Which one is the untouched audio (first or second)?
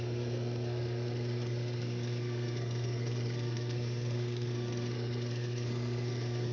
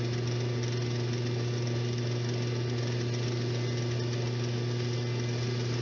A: second